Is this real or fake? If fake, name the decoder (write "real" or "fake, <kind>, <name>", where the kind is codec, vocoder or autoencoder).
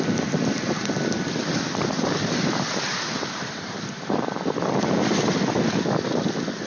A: fake, vocoder, BigVGAN v2